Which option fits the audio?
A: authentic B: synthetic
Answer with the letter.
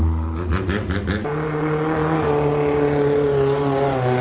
A